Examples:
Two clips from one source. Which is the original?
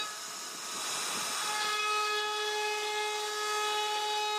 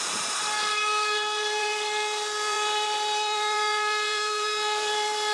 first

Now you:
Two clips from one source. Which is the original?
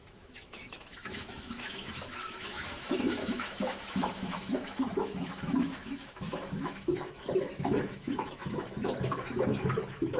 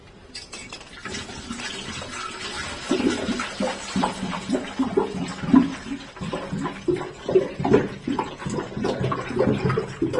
second